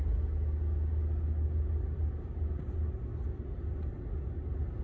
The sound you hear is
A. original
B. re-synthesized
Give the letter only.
A